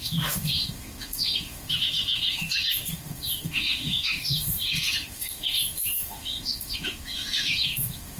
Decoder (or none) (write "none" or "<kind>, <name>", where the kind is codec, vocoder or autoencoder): autoencoder, DAC-VAE